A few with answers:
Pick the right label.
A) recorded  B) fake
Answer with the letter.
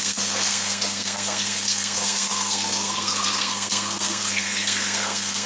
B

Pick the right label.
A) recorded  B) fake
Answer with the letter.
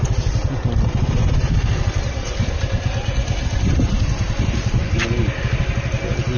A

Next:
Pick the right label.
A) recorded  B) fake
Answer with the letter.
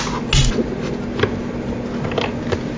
A